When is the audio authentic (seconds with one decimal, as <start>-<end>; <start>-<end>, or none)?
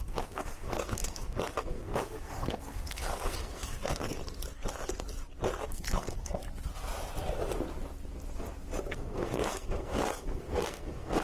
4.2-5.7; 6.4-8.9